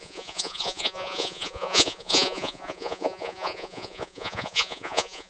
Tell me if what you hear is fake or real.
fake